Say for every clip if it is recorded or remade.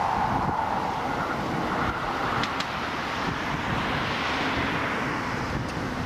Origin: recorded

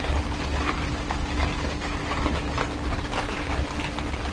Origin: recorded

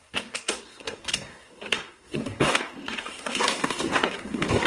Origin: remade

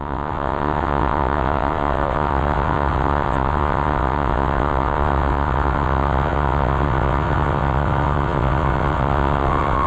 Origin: remade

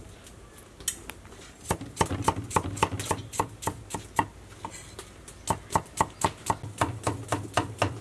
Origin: recorded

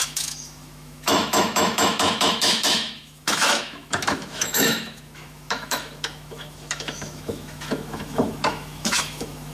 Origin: remade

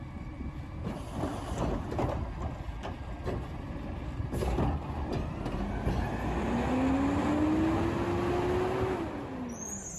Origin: recorded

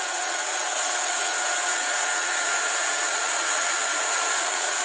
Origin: remade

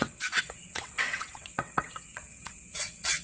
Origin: remade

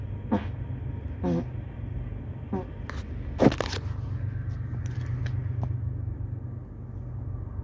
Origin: recorded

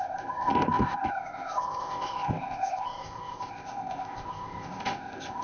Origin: remade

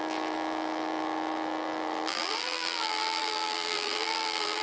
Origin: remade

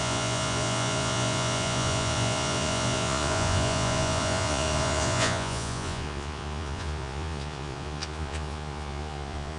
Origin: remade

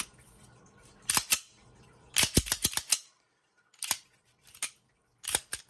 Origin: remade